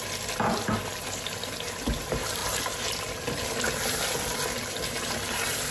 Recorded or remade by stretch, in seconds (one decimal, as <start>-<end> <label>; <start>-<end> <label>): 0.0-5.7 recorded